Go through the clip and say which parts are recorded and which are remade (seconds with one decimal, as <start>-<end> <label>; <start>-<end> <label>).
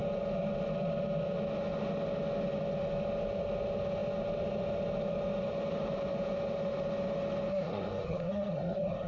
0.0-7.5 recorded; 7.5-9.1 remade